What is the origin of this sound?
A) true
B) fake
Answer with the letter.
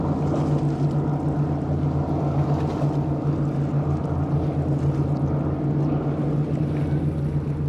A